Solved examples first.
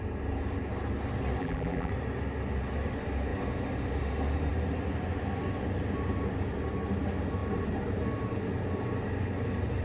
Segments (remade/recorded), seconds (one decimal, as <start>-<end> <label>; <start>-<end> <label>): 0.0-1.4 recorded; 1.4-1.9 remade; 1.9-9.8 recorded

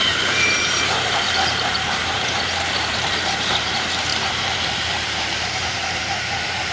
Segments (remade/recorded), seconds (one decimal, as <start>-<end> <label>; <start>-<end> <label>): 0.0-6.7 remade

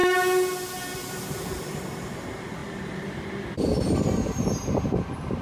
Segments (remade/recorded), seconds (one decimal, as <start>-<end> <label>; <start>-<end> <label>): 0.0-5.4 remade